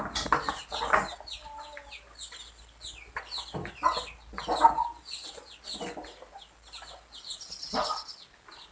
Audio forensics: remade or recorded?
recorded